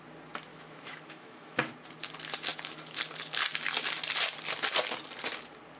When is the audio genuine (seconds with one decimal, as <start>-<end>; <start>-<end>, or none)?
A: 0.0-0.5; 1.7-5.8